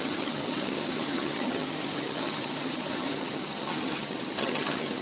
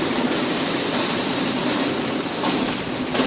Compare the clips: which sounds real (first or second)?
second